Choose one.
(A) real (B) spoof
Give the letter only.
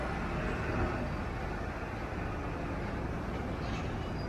A